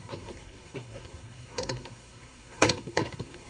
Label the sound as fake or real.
fake